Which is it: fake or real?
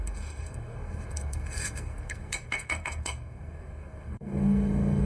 fake